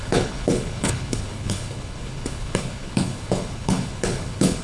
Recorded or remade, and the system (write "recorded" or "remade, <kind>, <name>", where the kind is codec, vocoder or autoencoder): remade, codec, HILCodec